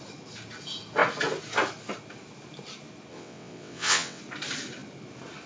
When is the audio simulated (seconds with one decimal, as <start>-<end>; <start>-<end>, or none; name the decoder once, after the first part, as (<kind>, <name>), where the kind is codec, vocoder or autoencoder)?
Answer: 3.1-4.2 (vocoder, WaveNeXt)